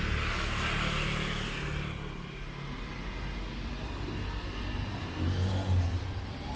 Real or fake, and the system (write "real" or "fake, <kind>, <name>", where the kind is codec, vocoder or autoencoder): real